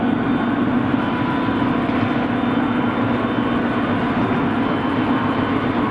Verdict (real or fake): real